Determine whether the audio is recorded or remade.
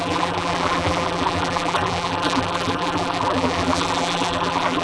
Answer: remade